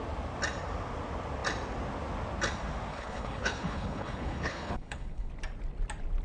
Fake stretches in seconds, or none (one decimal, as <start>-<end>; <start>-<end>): 2.9-5.3